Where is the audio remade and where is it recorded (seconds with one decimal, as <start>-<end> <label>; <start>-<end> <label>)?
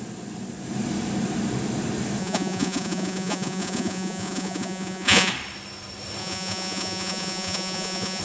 0.0-2.2 recorded; 2.2-5.3 remade; 5.3-6.2 recorded; 6.2-8.2 remade